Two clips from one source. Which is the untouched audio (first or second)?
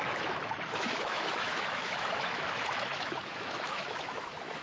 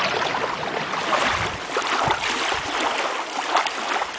second